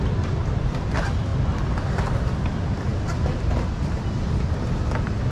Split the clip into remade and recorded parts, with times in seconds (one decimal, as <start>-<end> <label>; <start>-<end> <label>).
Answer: 0.0-5.3 recorded